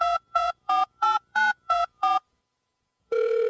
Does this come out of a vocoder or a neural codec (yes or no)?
yes